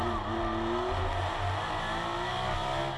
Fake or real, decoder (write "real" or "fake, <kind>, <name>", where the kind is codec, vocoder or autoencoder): real